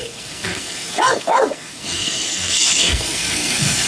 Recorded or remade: remade